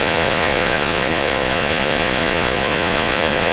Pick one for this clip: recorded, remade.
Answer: remade